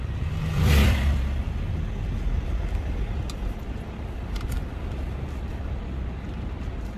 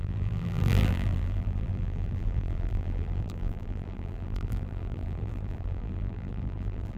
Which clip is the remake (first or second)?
second